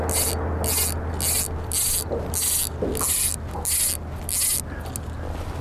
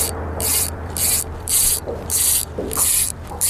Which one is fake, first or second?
second